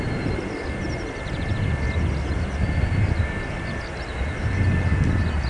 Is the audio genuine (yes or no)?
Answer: yes